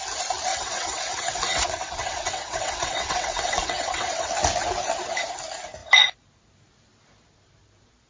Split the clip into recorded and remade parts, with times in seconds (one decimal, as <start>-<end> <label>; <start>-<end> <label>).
0.0-0.5 recorded; 0.5-4.3 remade; 4.3-8.1 recorded